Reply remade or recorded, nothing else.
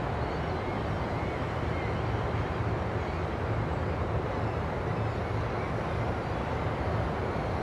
recorded